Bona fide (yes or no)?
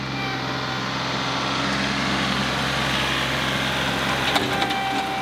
yes